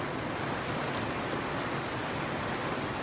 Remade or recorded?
recorded